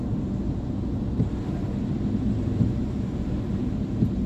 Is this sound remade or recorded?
recorded